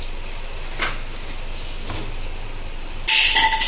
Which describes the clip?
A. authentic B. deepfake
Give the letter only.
A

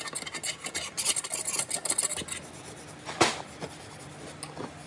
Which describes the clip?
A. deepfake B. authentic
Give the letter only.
B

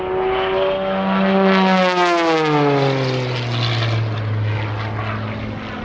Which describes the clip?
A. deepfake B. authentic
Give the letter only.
B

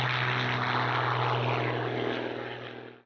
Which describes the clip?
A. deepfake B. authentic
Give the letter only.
B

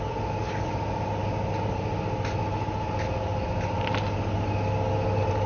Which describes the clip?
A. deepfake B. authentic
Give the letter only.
B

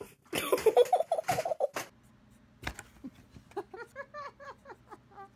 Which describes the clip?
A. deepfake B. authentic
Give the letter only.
B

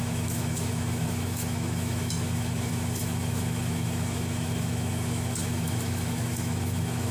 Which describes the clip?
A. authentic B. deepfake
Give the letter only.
B